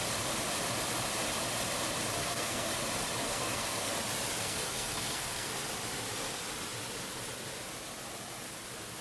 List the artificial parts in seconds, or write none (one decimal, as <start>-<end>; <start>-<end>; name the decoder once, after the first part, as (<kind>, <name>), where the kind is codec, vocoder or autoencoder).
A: 2.2-2.7 (codec, SNAC); 3.2-3.9; 4.4-5.5